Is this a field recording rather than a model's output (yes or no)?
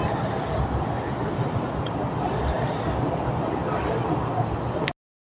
yes